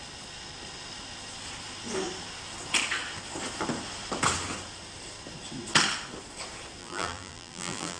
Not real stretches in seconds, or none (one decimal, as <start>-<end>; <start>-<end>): 6.8-8.0